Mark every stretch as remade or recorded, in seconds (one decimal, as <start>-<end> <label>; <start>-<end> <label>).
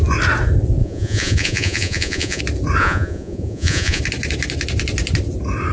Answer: 0.0-0.8 recorded; 0.8-2.4 remade; 2.4-2.8 recorded; 2.8-4.0 remade; 4.0-5.7 recorded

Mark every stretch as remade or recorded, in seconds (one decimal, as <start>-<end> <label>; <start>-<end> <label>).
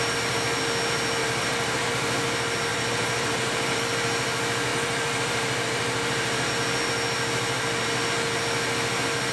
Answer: 0.0-1.2 recorded; 1.2-1.9 remade; 1.9-2.7 recorded; 2.7-3.8 remade; 3.8-4.7 recorded; 4.7-6.5 remade; 6.5-9.3 recorded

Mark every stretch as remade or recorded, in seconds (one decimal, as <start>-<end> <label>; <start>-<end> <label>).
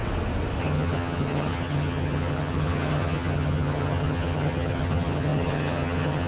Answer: 0.0-0.6 recorded; 0.6-6.3 remade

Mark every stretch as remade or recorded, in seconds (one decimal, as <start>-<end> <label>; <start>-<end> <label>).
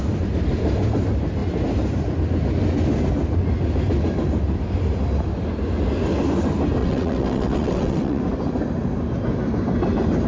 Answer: 0.0-6.8 recorded; 6.8-8.2 remade; 8.2-10.3 recorded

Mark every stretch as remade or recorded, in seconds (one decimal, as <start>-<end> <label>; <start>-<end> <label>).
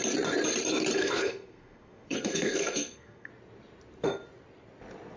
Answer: 0.0-1.0 recorded; 1.0-3.3 remade; 3.3-5.2 recorded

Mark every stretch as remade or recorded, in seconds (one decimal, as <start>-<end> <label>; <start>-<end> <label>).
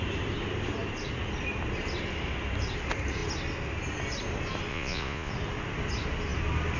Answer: 0.0-4.7 recorded; 4.7-5.3 remade; 5.3-6.8 recorded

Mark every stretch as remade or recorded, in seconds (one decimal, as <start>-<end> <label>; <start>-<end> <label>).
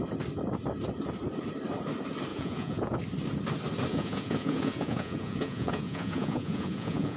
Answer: 0.0-2.3 recorded; 2.3-3.0 remade; 3.0-3.9 recorded; 3.9-7.2 remade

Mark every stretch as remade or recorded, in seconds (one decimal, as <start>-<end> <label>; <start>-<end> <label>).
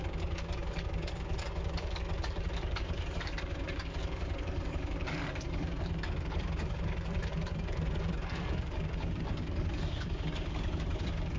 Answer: 0.0-11.4 remade